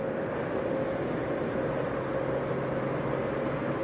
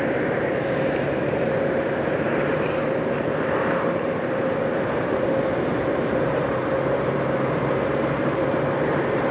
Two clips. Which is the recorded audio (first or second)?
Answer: first